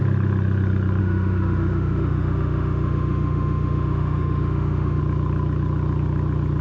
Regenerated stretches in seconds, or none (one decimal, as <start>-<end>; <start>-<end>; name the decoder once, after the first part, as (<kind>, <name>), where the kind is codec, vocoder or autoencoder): 1.0-5.0 (autoencoder, DAC-VAE)